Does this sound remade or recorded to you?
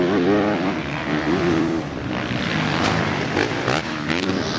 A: remade